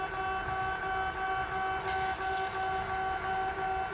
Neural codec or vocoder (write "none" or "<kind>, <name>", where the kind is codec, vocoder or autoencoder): none